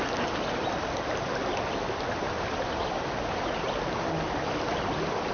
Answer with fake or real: real